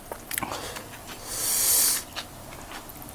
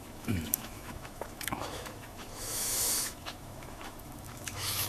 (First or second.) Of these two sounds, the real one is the first